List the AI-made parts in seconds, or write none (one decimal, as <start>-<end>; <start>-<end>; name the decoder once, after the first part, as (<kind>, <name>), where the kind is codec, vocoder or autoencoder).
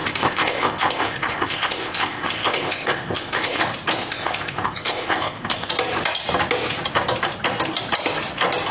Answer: 0.0-3.6 (codec, ZipCodec); 4.0-5.7